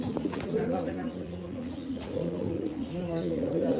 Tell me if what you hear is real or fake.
fake